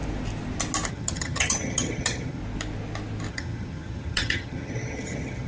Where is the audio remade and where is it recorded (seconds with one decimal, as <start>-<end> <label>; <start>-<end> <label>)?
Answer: 0.0-0.9 recorded; 0.9-2.4 remade; 2.4-3.3 recorded; 3.3-5.5 remade